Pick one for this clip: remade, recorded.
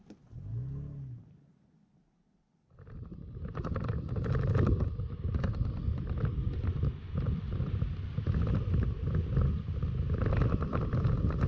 recorded